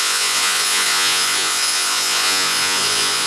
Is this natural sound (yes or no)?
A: no